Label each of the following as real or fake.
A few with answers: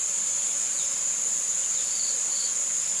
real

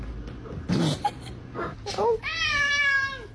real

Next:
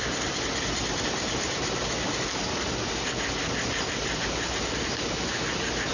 real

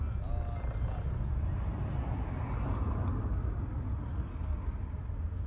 real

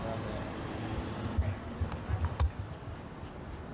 real